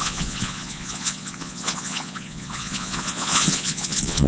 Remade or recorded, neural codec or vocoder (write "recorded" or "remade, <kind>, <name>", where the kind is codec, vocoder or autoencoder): remade, vocoder, Vocos